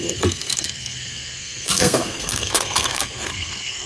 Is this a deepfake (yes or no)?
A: yes